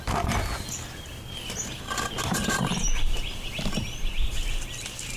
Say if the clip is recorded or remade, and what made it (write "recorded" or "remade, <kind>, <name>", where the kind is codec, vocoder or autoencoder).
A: recorded